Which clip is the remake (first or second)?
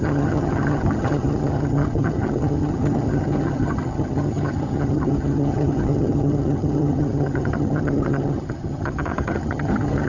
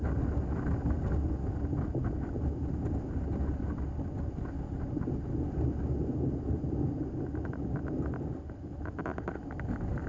first